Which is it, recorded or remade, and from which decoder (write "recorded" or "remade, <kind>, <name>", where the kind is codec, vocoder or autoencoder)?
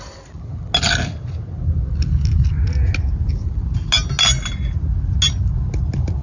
recorded